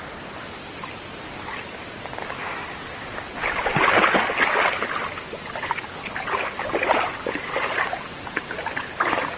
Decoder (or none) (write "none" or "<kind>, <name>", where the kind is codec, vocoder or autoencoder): none